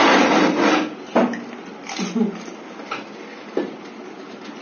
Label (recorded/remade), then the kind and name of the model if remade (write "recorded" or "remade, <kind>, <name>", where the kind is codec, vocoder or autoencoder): recorded